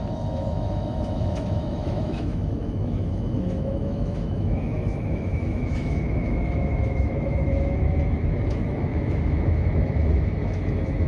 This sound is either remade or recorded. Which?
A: remade